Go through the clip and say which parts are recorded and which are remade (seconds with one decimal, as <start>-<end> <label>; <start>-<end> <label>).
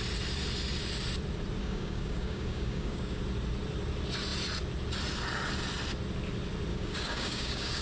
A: 0.0-1.6 recorded; 1.6-3.2 remade; 3.2-6.7 recorded; 6.7-7.8 remade